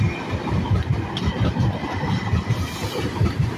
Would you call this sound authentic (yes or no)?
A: yes